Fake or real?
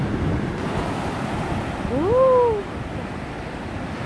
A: real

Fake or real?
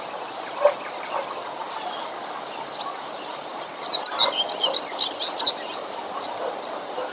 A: real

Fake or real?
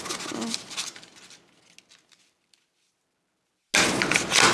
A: real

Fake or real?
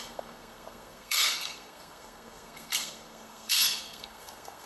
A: fake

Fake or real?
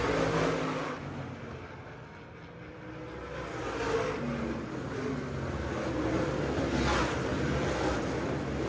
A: real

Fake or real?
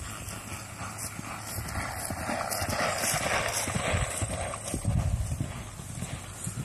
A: real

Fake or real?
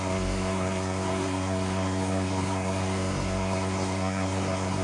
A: fake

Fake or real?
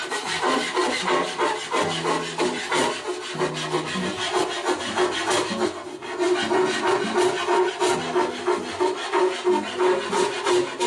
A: real